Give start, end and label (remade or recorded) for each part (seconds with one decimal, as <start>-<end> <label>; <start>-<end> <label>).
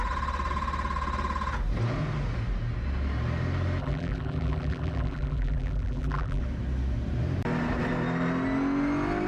0.0-3.8 recorded; 3.8-6.4 remade; 6.4-9.3 recorded